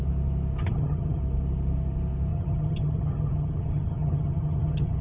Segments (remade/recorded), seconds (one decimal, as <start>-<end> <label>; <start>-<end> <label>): 0.0-0.6 recorded; 0.6-1.2 remade; 1.2-2.3 recorded; 2.3-5.0 remade